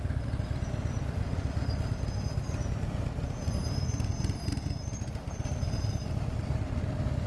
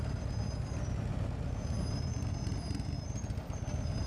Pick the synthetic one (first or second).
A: first